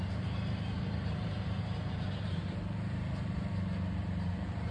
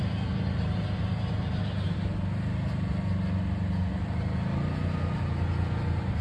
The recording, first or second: second